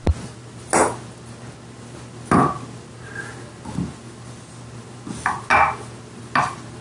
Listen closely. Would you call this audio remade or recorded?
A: recorded